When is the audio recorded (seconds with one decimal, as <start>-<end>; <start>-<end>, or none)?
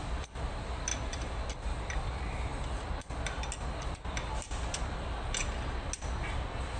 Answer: 0.0-6.8